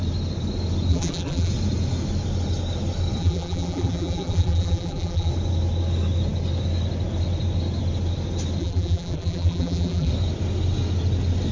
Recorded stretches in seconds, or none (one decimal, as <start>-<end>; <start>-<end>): 0.0-0.9; 1.5-3.2; 5.3-8.6; 10.1-11.5